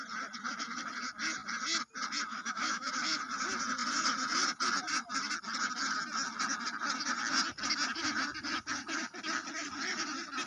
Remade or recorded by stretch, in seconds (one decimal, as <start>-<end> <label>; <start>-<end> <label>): 0.0-2.3 recorded; 2.3-2.9 remade; 2.9-10.5 recorded